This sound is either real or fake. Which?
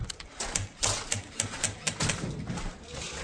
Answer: real